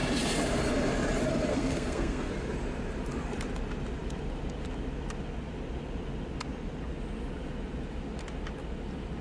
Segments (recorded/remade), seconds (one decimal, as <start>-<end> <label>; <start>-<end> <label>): 0.0-1.5 recorded; 1.5-2.3 remade; 2.3-9.2 recorded